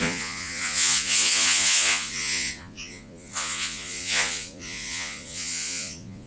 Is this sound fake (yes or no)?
yes